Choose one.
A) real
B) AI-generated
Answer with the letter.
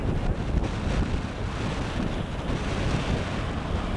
A